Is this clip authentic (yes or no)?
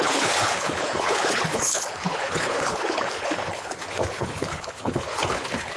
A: no